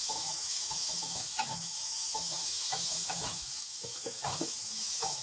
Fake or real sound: fake